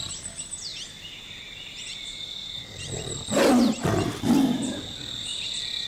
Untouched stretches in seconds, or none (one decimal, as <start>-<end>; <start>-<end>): 0.0-5.9